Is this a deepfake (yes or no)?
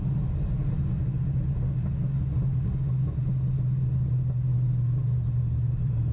no